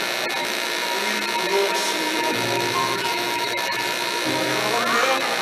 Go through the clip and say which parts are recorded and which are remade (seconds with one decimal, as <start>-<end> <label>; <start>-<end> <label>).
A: 0.0-0.4 recorded; 0.4-1.0 remade; 1.0-1.5 recorded; 1.5-4.5 remade; 4.5-5.4 recorded